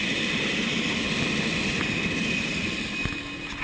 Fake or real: real